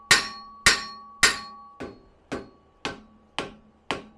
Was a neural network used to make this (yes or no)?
no